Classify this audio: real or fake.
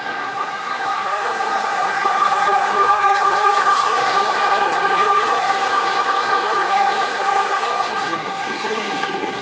fake